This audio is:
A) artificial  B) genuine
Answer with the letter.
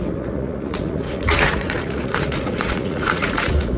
A